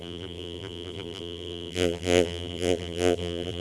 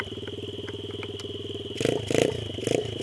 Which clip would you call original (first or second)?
second